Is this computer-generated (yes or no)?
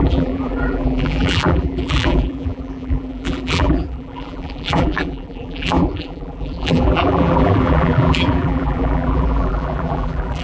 yes